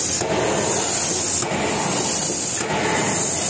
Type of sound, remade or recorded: recorded